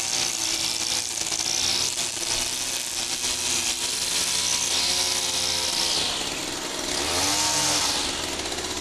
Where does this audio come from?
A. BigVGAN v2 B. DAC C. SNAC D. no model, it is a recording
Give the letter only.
D